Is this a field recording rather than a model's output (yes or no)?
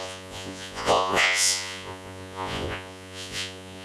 no